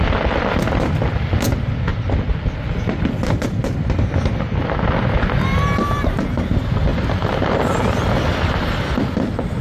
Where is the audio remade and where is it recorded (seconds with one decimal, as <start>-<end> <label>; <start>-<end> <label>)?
0.0-6.9 recorded; 6.9-7.9 remade; 7.9-9.6 recorded